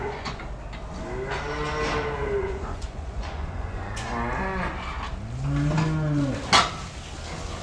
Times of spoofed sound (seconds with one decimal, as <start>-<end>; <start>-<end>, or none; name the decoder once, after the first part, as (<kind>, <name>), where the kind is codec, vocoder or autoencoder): 0.0-0.4 (vocoder, Vocos); 2.4-4.1